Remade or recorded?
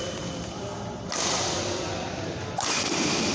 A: recorded